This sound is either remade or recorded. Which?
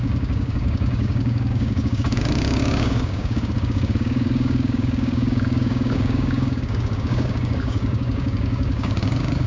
remade